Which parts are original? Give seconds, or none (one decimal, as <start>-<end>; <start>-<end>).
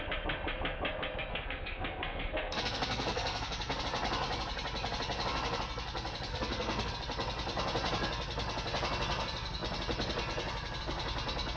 0.0-1.3; 3.8-6.3; 6.9-11.6